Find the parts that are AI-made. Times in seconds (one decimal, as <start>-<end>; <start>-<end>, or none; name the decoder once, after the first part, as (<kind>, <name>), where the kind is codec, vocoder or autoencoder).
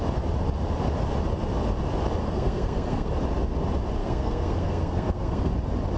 2.2-3.1 (codec, SNAC); 4.0-5.5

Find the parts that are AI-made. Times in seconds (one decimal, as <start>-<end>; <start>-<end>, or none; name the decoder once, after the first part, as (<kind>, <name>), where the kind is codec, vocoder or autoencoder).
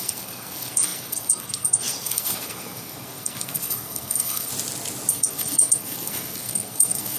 0.0-4.5 (codec, SNAC); 5.1-7.2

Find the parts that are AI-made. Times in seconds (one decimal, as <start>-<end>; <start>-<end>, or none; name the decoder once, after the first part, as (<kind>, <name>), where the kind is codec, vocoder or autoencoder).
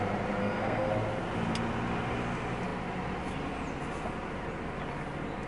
0.4-0.9 (codec, SNAC)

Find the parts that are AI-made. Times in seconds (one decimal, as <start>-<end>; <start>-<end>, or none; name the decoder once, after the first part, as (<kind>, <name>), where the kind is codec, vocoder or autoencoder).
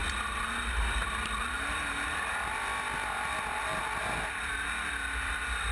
none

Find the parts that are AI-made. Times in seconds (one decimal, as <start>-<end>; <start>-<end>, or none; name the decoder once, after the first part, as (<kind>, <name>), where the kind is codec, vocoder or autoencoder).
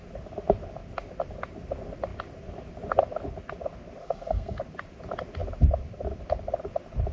4.0-4.6 (codec, SNAC)